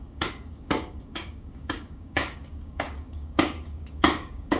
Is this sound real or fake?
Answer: fake